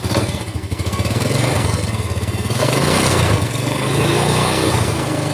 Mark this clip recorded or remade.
remade